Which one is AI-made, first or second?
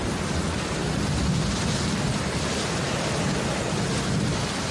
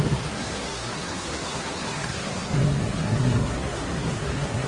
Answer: second